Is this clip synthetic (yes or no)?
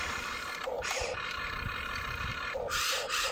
yes